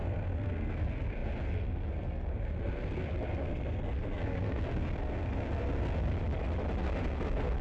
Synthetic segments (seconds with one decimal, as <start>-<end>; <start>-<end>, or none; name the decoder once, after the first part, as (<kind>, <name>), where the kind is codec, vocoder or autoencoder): 0.0-6.1 (codec, SNAC); 6.8-7.6